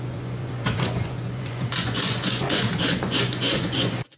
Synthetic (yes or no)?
yes